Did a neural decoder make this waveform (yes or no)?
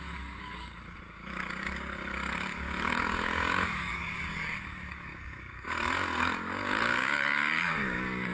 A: yes